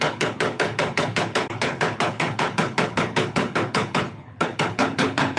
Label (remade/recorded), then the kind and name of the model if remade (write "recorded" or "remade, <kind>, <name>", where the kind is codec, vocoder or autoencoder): remade, codec, HILCodec